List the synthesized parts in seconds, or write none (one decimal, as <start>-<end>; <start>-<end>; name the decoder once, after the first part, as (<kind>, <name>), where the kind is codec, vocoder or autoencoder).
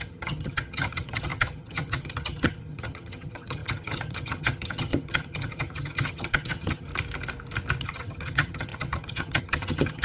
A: 0.0-6.9 (vocoder, HiFi-GAN); 7.8-10.0